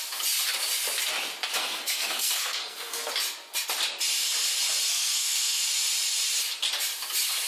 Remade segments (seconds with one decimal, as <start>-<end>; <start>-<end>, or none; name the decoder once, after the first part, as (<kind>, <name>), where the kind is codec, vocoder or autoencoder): 1.6-3.1 (codec, SNAC); 4.9-5.6